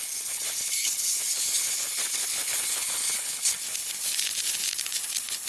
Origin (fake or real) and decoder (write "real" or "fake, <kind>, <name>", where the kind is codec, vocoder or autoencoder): fake, codec, HILCodec